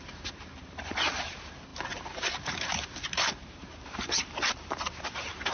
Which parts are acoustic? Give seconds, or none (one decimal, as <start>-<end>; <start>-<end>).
none